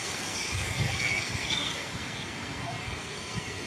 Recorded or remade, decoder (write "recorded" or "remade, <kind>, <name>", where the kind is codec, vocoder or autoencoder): remade, codec, SNAC